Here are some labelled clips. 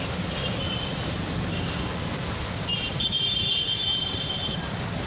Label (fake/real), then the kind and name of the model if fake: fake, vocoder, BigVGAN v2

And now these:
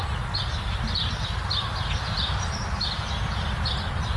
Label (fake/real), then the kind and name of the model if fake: real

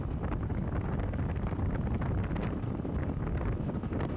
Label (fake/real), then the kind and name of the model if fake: real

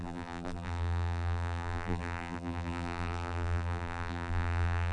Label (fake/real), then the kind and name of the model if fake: fake, vocoder, BigVGAN v2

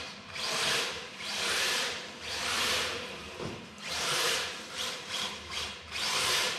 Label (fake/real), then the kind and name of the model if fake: fake, vocoder, BigVGAN v2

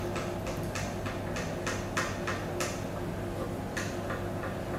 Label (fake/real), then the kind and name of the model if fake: real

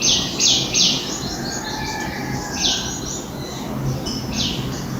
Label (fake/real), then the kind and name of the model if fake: real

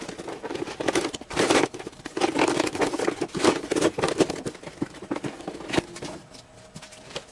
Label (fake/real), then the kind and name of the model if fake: real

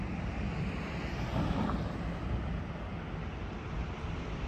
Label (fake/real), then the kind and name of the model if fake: fake, vocoder, BigVGAN v2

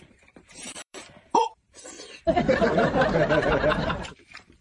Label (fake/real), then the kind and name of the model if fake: fake, vocoder, BigVGAN v2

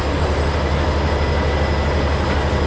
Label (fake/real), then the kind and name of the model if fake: real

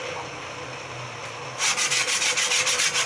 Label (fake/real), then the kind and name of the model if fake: real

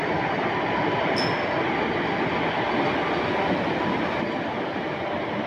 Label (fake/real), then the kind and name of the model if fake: real